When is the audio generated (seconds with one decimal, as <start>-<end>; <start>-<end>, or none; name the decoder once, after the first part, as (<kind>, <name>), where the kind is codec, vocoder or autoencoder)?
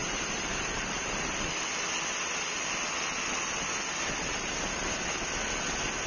0.0-1.3 (vocoder, BigVGAN v2)